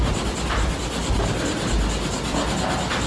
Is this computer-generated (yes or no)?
no